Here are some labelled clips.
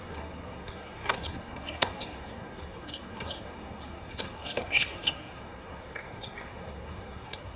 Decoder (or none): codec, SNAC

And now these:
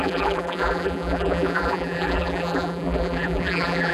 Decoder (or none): vocoder, BigVGAN v2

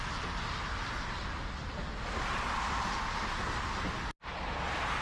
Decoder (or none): none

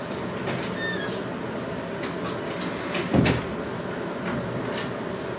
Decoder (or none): none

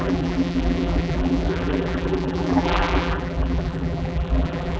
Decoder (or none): vocoder, BigVGAN v2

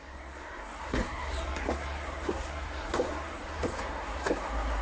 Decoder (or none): codec, SNAC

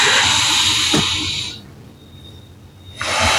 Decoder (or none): none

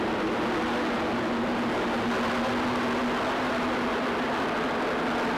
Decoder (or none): none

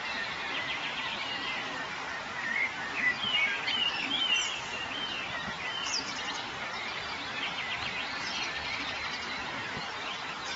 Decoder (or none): vocoder, BigVGAN v2